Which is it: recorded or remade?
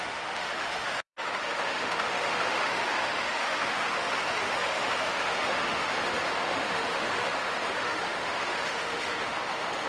remade